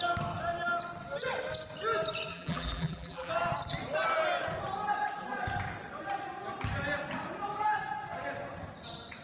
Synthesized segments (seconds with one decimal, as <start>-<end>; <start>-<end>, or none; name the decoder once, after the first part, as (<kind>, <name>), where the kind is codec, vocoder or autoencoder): 2.3-3.3 (vocoder, BigVGAN v2)